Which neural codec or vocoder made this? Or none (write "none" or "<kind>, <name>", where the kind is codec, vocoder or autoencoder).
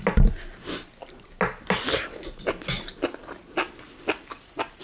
none